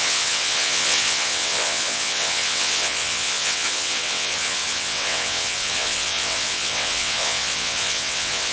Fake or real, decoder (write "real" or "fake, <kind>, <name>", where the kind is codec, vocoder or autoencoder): fake, vocoder, WaveNeXt